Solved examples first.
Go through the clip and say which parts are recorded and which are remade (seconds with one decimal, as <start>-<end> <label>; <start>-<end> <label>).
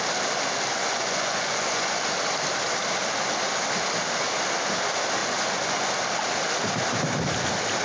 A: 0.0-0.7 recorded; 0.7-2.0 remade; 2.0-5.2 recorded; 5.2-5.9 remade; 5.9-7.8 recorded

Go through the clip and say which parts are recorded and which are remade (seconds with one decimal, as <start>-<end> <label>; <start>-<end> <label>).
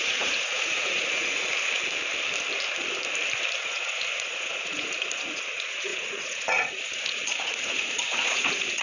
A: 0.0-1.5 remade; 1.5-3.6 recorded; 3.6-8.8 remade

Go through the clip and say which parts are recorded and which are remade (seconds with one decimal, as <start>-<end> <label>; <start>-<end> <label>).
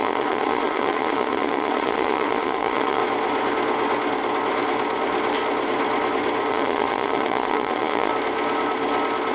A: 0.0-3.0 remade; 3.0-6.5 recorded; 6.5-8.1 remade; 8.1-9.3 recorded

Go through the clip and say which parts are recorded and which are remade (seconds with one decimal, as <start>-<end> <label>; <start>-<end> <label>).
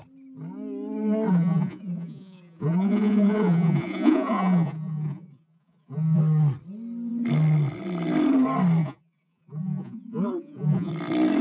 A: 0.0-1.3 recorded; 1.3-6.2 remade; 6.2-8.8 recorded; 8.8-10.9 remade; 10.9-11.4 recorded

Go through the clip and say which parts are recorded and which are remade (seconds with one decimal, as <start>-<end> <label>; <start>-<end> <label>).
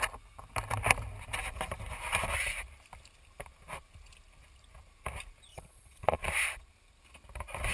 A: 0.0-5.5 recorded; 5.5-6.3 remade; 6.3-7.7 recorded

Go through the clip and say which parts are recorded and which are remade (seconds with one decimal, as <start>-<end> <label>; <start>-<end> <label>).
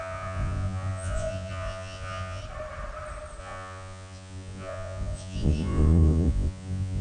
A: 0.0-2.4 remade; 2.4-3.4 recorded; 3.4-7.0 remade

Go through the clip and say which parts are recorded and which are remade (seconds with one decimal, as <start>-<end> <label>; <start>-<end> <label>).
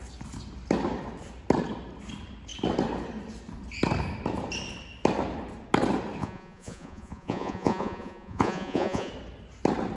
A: 0.0-6.2 recorded; 6.2-9.1 remade; 9.1-10.0 recorded